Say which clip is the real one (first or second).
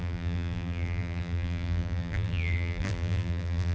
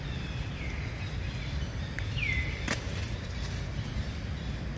second